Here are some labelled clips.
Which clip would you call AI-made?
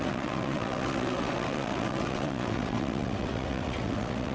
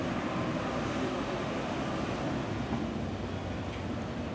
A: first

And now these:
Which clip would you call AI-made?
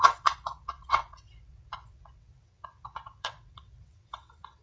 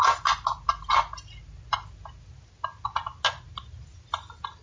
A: first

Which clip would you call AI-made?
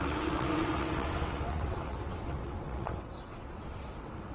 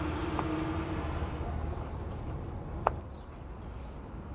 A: first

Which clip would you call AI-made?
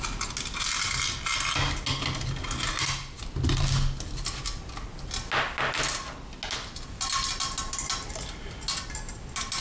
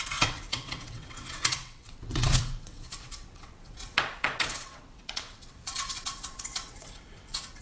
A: second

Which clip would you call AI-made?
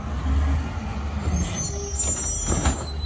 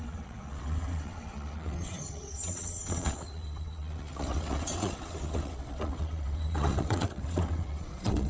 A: second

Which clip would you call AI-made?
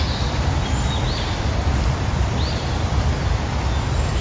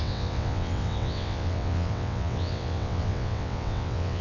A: second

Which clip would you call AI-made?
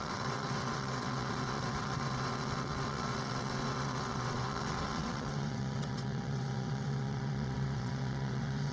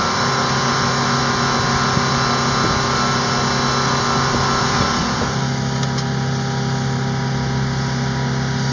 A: first